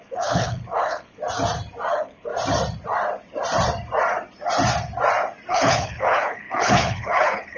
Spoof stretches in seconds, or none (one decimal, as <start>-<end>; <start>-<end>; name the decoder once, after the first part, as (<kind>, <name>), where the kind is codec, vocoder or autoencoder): 0.0-1.2 (codec, HILCodec); 1.9-2.3; 5.5-7.6